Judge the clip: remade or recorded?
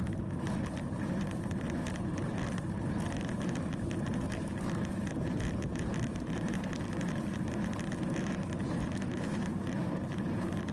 remade